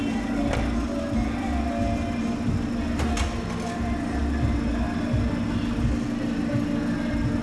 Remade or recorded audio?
recorded